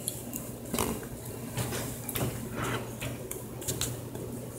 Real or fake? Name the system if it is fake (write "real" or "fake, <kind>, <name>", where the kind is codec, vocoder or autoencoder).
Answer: real